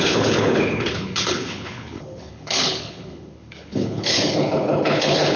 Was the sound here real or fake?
fake